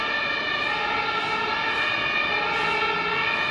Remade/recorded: recorded